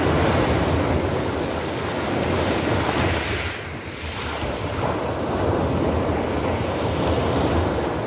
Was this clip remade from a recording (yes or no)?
no